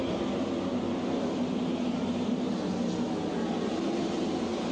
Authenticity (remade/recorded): recorded